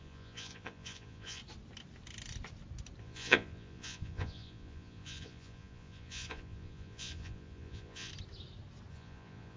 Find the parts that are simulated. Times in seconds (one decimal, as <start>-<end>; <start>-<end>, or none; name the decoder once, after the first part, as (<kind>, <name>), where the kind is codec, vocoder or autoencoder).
0.0-1.4 (vocoder, Vocos); 3.0-8.1; 8.9-9.6